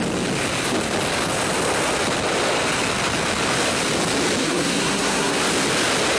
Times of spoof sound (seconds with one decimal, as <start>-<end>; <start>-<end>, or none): 4.4-5.4